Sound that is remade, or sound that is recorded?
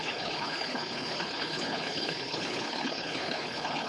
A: remade